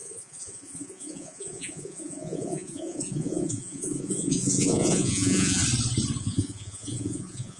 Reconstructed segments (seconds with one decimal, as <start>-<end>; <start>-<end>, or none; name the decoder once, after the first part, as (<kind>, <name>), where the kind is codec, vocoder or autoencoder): 0.0-5.6 (vocoder, Vocos); 6.2-7.6